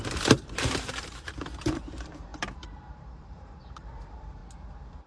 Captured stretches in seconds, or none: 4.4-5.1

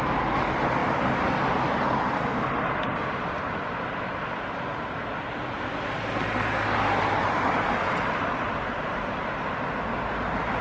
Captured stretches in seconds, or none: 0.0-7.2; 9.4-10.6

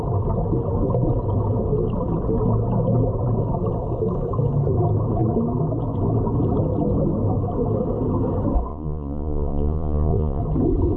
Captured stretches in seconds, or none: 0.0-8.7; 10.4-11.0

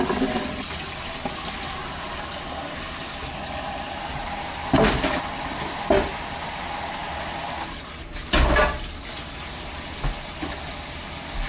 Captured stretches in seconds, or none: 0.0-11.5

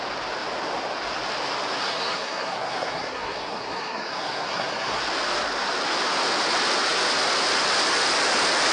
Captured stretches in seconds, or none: 0.0-1.8; 5.0-8.7

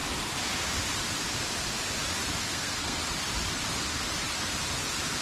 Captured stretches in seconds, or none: 0.0-2.4; 3.0-5.2